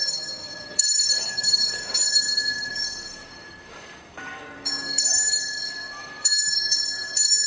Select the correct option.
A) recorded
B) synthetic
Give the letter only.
B